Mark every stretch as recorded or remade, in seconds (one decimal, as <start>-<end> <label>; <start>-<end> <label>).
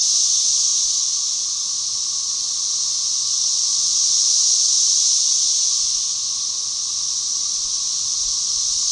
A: 0.0-0.7 recorded; 0.7-2.4 remade; 2.4-3.7 recorded; 3.7-6.0 remade; 6.0-8.9 recorded